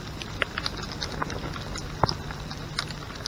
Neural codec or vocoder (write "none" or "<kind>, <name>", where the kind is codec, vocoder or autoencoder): none